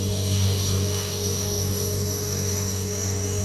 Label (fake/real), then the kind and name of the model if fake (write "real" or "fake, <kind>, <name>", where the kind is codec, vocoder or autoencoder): fake, codec, DAC